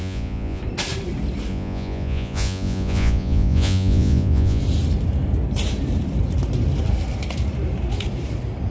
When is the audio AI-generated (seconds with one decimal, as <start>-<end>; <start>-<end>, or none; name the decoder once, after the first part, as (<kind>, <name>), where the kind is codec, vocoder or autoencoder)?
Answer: 0.0-0.6 (vocoder, Vocos); 1.5-4.6